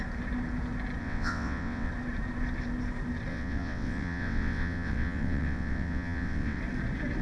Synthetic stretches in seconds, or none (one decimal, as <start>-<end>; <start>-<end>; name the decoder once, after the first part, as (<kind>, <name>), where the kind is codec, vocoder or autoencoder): 1.0-1.9 (vocoder, WaveNeXt); 3.3-6.6